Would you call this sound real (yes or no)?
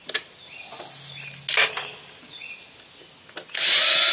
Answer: yes